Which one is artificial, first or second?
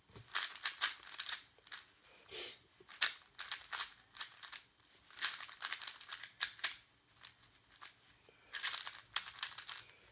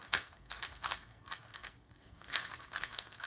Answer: second